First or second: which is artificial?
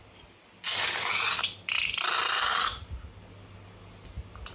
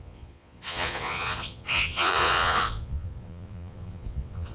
second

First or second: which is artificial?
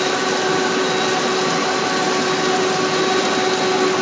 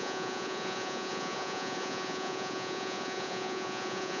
second